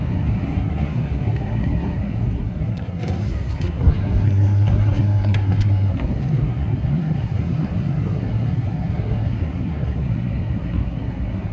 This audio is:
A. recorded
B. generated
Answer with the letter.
B